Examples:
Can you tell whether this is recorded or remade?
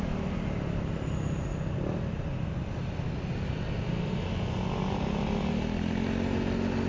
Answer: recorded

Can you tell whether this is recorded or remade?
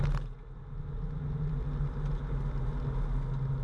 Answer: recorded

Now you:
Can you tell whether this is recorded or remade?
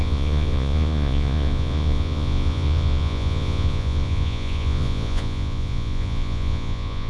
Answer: remade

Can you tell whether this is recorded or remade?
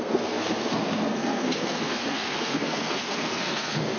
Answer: remade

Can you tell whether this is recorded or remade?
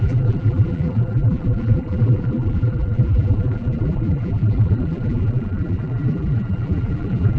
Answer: remade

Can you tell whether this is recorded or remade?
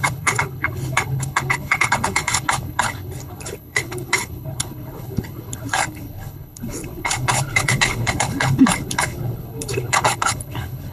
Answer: remade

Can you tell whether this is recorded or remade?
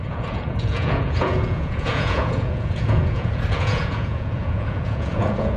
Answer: remade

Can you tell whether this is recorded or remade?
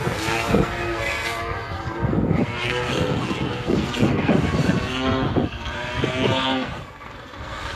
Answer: remade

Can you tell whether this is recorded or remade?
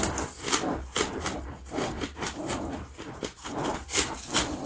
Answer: recorded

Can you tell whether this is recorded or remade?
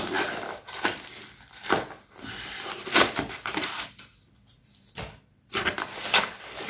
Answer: remade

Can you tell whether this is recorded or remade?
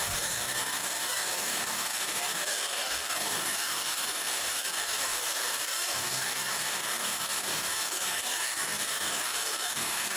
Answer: remade